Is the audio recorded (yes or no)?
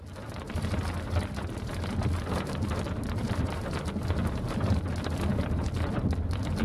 yes